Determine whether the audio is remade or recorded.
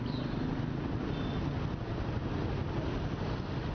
recorded